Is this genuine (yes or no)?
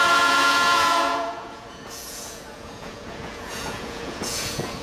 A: no